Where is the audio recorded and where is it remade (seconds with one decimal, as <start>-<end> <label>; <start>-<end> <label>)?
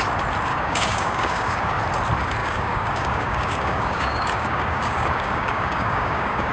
0.0-0.5 recorded; 0.5-1.8 remade; 1.8-2.4 recorded; 2.4-6.5 remade